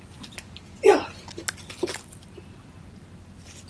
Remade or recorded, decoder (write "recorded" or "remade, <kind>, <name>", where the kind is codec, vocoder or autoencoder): recorded